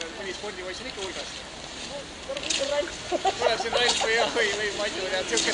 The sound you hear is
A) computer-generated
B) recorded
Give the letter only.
B